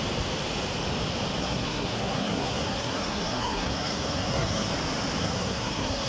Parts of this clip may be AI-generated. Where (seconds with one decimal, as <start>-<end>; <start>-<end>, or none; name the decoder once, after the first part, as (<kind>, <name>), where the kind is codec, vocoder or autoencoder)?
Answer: 1.4-4.7 (codec, SNAC); 5.2-6.1